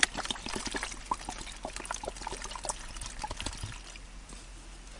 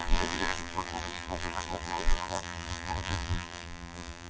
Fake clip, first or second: second